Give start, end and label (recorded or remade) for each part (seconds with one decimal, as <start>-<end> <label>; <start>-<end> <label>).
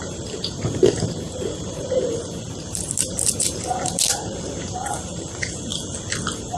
0.0-5.7 remade; 5.7-6.6 recorded